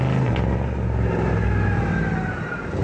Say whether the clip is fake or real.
real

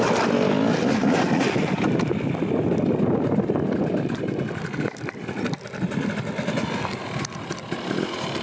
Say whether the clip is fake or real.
real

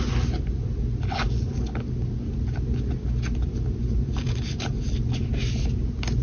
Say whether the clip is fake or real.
real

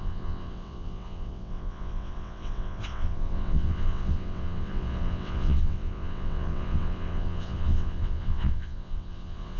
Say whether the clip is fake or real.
fake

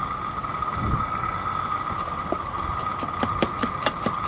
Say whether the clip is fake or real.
real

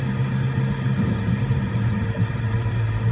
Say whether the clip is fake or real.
real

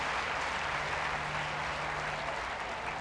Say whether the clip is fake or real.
real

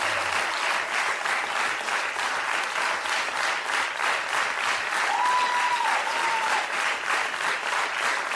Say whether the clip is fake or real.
real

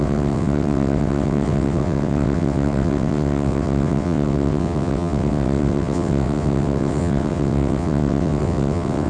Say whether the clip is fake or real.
fake